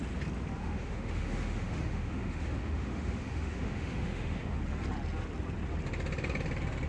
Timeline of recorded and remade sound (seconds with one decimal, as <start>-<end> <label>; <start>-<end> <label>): 0.0-0.6 recorded; 0.6-4.6 remade; 4.6-6.9 recorded